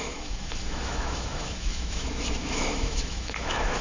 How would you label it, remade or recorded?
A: remade